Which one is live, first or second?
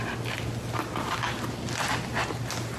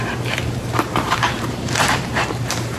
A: first